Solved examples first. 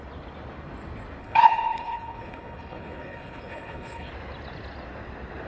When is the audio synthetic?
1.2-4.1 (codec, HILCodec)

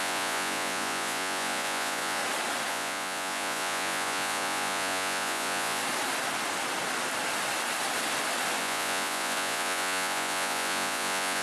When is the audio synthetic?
0.0-2.2 (vocoder, Vocos); 2.7-5.8; 8.6-11.4